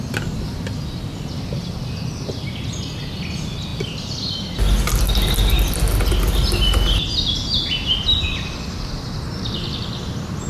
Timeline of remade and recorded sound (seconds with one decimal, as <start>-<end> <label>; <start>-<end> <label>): 0.0-10.5 recorded